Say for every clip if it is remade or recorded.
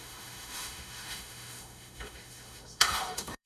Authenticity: remade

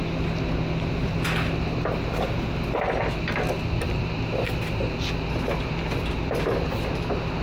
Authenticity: recorded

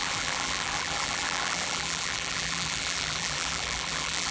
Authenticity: remade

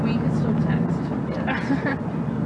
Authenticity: recorded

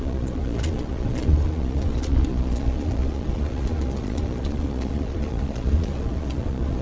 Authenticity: remade